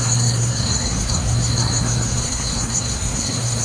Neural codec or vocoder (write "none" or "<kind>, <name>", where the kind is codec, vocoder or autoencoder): codec, SNAC